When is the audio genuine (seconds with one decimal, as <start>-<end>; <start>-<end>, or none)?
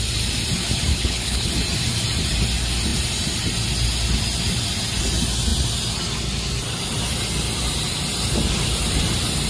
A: 0.0-0.9; 1.5-9.5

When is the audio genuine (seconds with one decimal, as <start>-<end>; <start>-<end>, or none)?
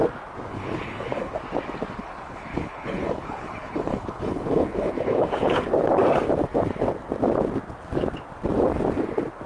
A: 0.0-0.5; 1.3-2.0; 5.6-9.5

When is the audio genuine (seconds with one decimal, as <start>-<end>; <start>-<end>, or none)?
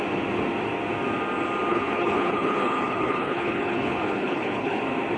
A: 0.0-1.7; 4.8-5.2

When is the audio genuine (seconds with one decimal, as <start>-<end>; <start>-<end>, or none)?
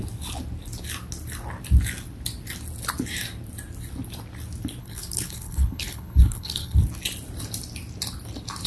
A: 0.0-4.8; 6.8-8.7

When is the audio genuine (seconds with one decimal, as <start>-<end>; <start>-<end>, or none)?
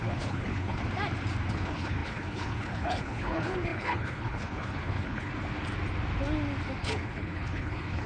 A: 0.8-1.5; 5.3-6.8